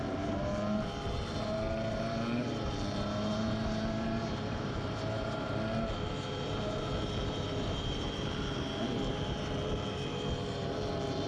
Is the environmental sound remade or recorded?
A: remade